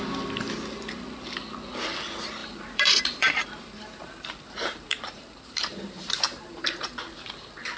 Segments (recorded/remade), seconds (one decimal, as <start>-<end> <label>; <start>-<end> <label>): 0.0-2.4 recorded; 2.4-7.1 remade; 7.1-7.8 recorded